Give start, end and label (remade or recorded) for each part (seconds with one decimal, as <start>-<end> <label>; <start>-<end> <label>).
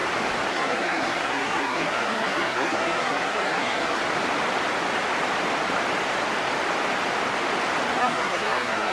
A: 0.0-0.5 recorded; 0.5-4.0 remade; 4.0-8.0 recorded; 8.0-8.9 remade